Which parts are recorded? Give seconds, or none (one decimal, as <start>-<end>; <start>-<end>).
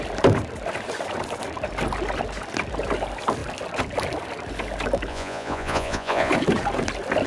0.0-5.1; 6.3-7.3